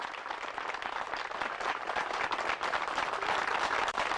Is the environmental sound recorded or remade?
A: recorded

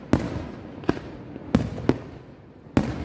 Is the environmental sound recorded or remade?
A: recorded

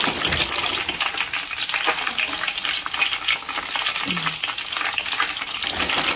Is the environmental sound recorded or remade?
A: recorded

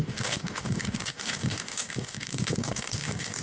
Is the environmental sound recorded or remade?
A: remade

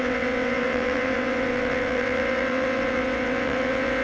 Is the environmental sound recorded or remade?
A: remade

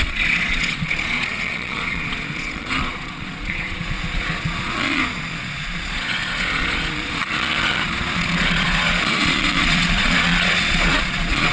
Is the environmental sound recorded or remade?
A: remade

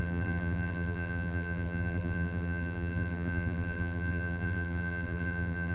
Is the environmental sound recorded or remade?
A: remade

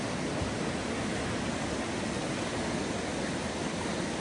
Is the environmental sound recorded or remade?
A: recorded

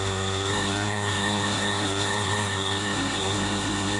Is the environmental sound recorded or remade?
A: remade